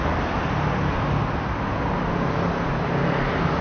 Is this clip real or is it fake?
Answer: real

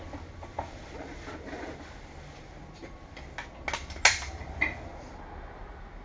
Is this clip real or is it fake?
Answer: real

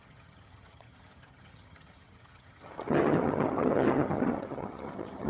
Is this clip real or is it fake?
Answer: fake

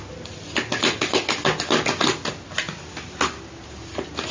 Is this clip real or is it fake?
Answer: real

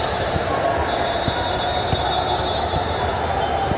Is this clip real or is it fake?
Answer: real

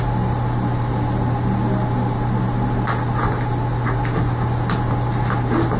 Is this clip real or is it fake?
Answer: real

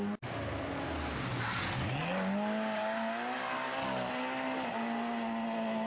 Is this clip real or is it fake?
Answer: real